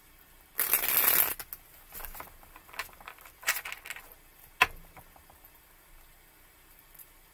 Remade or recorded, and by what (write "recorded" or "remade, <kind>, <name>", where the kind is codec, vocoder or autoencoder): recorded